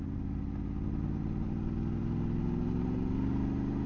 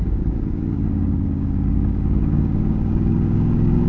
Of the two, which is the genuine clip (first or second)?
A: first